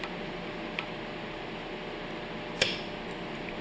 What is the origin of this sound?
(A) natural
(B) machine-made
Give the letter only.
A